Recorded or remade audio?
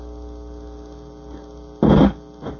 recorded